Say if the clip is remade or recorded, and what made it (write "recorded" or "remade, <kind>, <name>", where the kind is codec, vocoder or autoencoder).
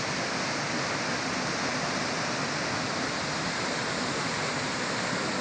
recorded